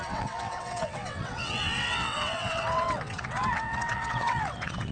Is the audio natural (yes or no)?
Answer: no